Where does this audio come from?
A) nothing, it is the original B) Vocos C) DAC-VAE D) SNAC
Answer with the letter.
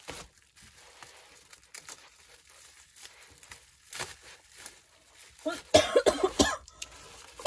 A